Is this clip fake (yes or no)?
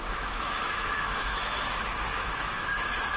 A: yes